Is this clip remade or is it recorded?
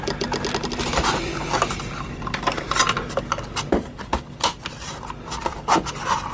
recorded